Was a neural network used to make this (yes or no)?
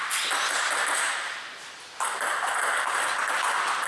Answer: no